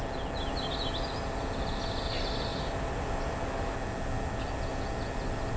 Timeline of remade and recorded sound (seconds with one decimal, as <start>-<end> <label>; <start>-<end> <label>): 0.0-5.6 recorded